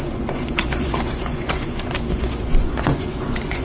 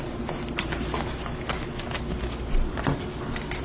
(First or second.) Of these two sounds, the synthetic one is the first